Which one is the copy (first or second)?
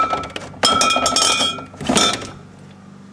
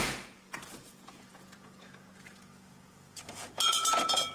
second